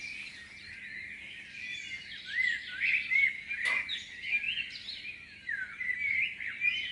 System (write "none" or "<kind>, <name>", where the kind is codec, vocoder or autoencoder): none